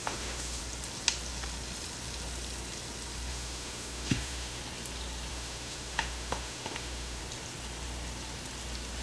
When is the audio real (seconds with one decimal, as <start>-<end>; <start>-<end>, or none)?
0.6-3.3; 4.6-5.3; 7.2-9.0